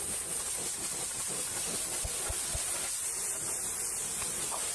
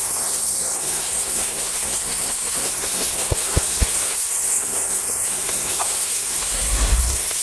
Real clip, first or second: first